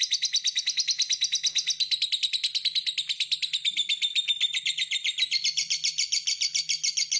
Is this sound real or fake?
real